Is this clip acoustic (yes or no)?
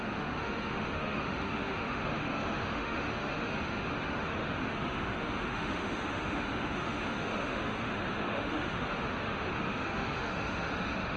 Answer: no